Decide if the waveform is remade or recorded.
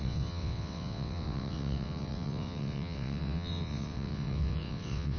remade